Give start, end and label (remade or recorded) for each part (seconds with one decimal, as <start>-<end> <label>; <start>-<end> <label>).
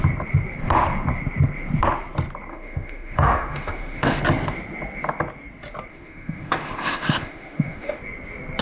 0.0-2.5 recorded; 2.5-4.2 remade; 4.2-5.9 recorded; 5.9-8.0 remade; 8.0-8.6 recorded